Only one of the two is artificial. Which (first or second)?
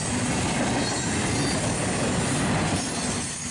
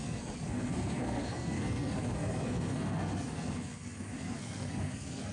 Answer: second